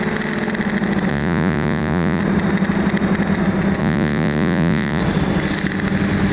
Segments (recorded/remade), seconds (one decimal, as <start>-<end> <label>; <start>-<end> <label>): 0.0-1.1 recorded; 1.1-2.2 remade; 2.2-3.8 recorded; 3.8-5.0 remade; 5.0-6.3 recorded